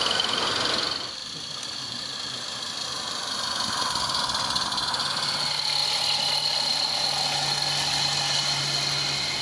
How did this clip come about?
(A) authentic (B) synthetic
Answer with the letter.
A